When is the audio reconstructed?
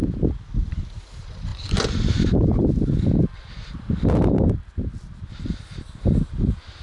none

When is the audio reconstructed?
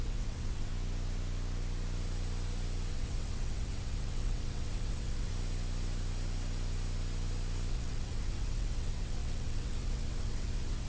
0.0-0.7; 2.9-5.3; 7.7-10.9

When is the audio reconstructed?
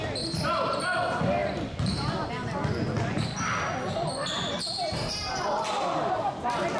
none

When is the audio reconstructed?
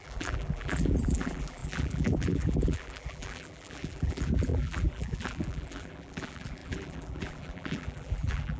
0.0-8.6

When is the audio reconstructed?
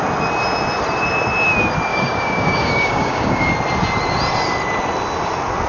1.9-3.5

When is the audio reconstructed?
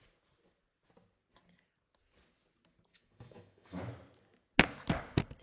2.9-3.8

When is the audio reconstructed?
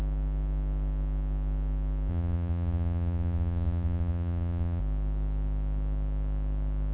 2.1-4.8